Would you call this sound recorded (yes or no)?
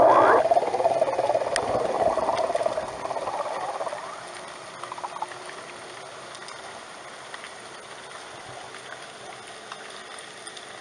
yes